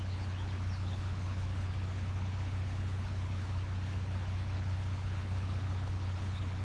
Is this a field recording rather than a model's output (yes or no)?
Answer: no